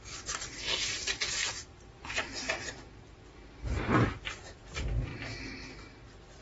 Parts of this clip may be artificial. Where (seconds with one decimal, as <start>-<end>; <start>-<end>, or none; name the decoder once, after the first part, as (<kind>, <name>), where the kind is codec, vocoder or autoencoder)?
0.0-5.1 (vocoder, BigVGAN v2)